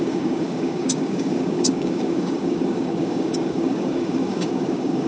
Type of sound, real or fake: fake